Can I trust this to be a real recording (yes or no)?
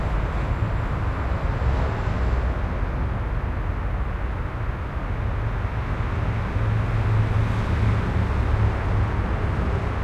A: yes